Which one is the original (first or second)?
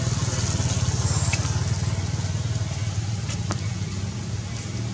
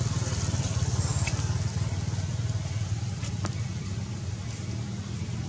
first